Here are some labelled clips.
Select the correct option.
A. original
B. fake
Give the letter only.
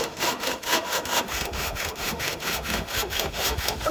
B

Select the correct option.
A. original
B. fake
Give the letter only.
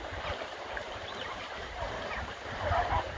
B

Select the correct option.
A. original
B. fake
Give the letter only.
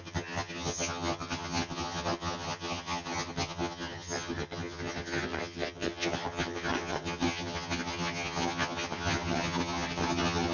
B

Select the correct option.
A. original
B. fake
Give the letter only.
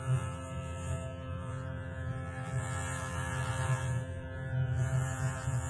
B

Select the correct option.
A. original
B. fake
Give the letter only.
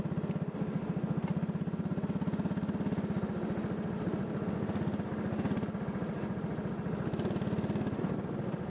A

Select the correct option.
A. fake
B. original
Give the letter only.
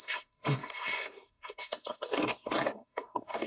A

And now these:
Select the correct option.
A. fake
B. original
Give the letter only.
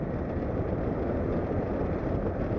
B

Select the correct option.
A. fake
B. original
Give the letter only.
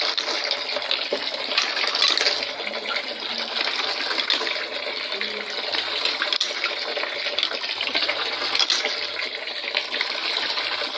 B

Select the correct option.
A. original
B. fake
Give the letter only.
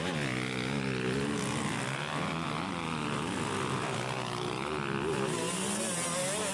A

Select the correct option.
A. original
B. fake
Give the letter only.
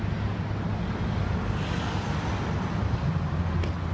A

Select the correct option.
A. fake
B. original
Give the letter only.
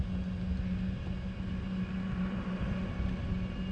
B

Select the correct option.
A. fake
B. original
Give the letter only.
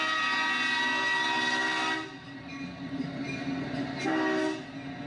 B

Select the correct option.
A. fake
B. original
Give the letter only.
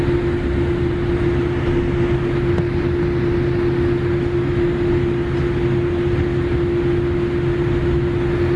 B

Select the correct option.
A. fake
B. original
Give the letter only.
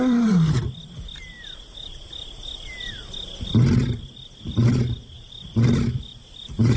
B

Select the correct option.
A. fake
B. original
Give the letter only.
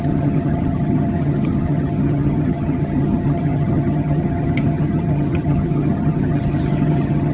A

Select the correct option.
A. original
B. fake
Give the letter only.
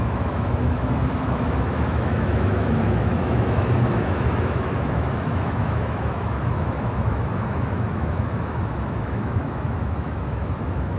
B